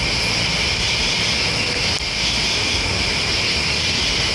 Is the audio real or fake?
real